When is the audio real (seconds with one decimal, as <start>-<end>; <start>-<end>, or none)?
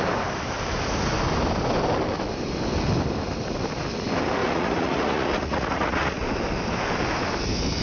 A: 0.0-4.4; 6.2-7.8